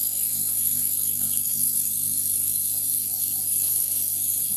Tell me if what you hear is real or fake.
fake